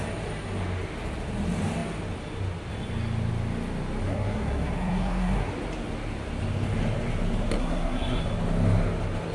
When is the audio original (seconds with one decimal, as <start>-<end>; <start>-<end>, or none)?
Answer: 0.0-4.1; 5.5-7.6; 8.2-9.3